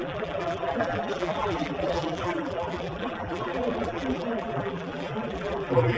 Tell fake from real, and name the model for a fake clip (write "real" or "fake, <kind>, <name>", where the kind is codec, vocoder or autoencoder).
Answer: fake, vocoder, BigVGAN v2